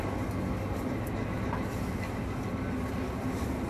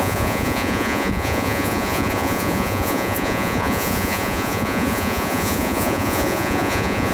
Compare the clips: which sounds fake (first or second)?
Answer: second